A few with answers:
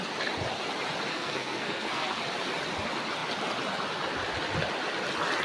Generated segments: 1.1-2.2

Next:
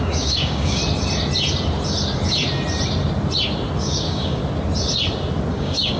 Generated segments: 0.0-0.8; 3.8-4.4; 5.5-6.0

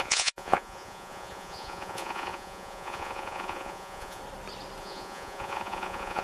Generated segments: 0.0-4.2; 4.8-6.2

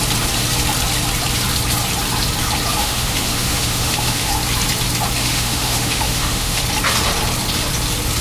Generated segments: 2.8-4.3; 5.2-6.6